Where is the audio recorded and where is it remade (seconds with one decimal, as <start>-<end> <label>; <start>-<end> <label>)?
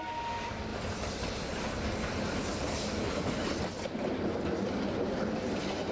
0.0-5.9 recorded